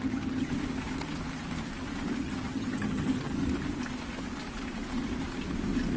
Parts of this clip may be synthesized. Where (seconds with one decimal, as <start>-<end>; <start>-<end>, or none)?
0.0-0.5; 2.2-3.4